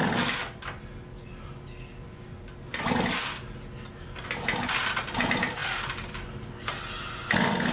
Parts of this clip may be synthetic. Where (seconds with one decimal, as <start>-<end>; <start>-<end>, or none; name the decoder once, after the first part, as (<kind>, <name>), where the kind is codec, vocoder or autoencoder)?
none